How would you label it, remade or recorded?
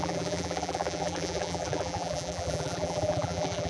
remade